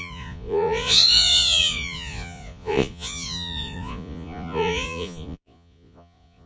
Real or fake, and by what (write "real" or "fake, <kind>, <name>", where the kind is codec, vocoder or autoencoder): fake, vocoder, Vocos